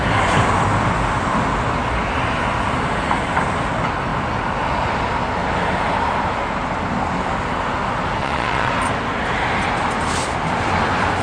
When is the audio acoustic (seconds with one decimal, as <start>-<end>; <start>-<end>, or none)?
0.0-8.2; 8.7-11.2